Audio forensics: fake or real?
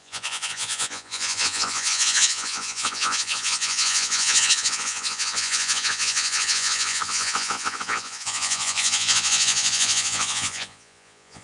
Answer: fake